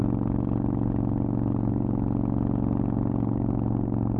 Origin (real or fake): real